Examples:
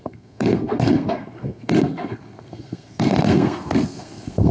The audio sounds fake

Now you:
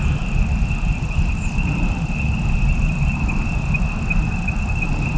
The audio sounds real